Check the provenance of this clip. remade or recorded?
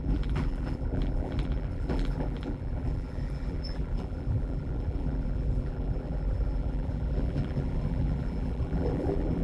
remade